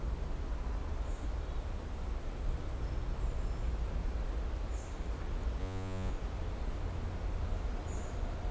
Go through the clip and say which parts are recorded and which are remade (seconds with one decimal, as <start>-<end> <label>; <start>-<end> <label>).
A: 0.0-5.6 recorded; 5.6-6.1 remade; 6.1-8.5 recorded